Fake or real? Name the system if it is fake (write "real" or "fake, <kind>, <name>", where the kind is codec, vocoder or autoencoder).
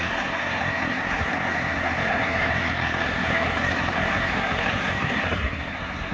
fake, codec, SNAC